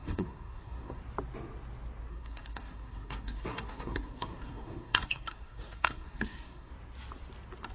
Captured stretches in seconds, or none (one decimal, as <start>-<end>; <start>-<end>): 1.0-2.1; 6.7-7.7